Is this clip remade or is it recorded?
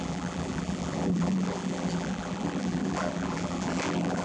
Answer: remade